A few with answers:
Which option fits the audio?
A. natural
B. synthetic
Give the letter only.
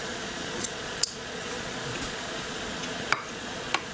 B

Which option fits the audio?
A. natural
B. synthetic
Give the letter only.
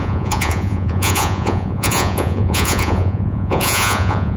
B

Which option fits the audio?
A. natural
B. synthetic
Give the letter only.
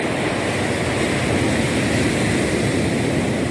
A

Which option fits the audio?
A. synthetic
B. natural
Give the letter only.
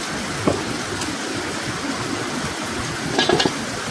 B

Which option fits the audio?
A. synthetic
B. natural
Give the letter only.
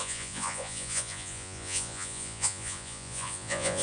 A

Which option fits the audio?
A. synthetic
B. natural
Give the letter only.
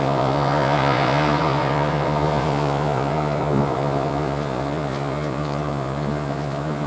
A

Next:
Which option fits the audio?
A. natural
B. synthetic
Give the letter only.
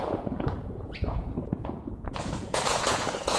B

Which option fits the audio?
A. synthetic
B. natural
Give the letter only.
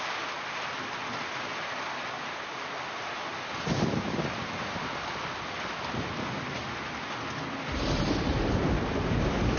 B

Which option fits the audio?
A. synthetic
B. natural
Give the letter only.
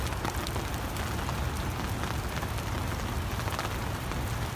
B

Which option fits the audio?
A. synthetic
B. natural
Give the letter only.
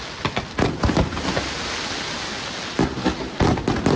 B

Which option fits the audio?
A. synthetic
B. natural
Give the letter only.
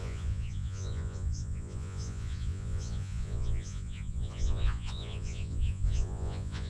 A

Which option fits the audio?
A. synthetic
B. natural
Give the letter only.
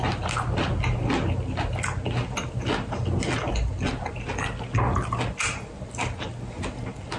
B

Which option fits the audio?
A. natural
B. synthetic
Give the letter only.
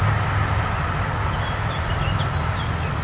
A